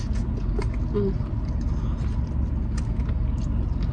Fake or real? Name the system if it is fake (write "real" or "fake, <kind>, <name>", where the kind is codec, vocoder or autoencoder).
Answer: real